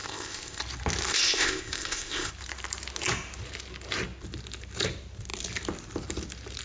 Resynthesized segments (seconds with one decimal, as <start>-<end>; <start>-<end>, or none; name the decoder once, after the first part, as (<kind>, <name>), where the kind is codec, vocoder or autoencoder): 0.0-0.6 (codec, ZipCodec); 1.1-2.3